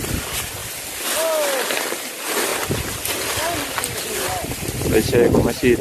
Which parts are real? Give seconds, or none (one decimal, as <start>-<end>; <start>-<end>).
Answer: 0.0-5.8